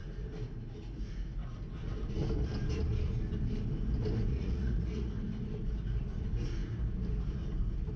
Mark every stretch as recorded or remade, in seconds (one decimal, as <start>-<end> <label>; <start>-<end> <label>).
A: 0.0-4.3 recorded; 4.3-5.1 remade; 5.1-8.0 recorded